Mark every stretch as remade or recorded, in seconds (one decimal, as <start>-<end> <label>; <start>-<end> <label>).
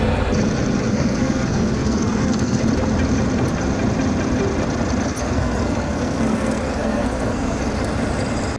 0.0-0.9 recorded; 0.9-2.6 remade; 2.6-5.2 recorded; 5.2-7.6 remade; 7.6-8.6 recorded